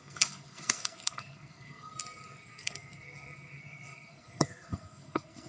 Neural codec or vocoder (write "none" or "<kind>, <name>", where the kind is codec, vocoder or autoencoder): codec, SNAC